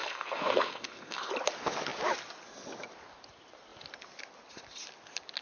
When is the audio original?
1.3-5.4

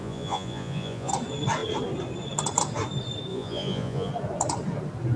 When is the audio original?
1.1-3.3; 4.1-5.2

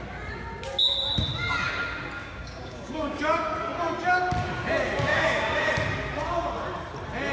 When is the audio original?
0.0-2.2; 3.2-5.1; 5.7-7.3

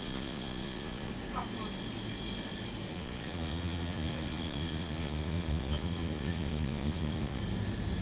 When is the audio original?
1.1-2.9; 7.4-8.0

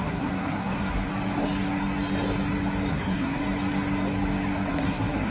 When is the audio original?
1.1-2.9; 3.4-4.7

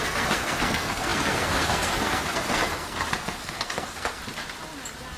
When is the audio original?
4.2-5.2

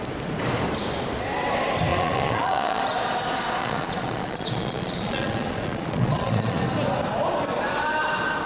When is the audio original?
0.0-1.9; 2.8-3.6; 6.6-8.5

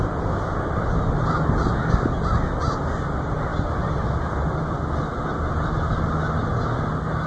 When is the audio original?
0.0-7.3